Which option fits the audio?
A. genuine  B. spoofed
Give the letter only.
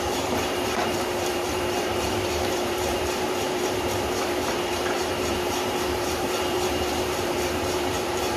B